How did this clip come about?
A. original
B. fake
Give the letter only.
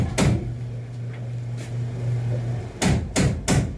A